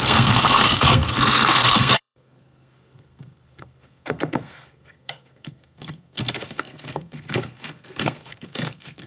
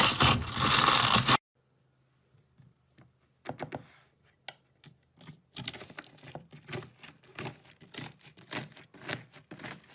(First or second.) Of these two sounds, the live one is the second